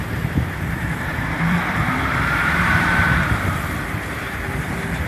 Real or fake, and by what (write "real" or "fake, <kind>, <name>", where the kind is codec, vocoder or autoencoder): fake, vocoder, BigVGAN v2